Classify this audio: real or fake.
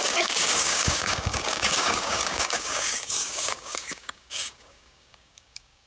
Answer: fake